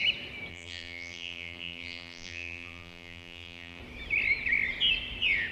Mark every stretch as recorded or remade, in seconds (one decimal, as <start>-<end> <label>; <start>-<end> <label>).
0.0-0.5 recorded; 0.5-3.8 remade; 3.8-5.5 recorded

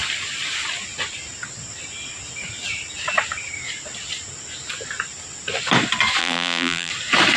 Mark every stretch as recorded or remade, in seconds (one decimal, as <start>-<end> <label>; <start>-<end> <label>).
0.0-6.2 recorded; 6.2-6.9 remade; 6.9-7.4 recorded

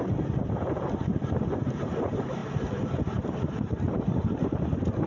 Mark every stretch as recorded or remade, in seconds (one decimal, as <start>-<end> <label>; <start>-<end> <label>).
0.0-5.1 remade